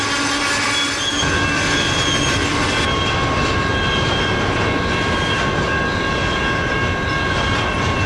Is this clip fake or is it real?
real